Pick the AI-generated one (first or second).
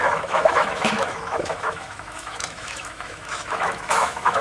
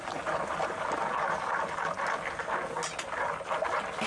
first